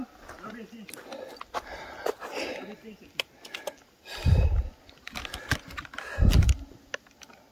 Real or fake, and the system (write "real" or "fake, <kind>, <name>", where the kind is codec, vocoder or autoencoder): real